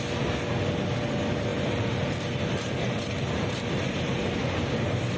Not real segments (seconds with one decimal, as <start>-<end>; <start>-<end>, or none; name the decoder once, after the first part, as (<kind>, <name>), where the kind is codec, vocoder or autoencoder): 1.5-4.6 (vocoder, BigVGAN v2)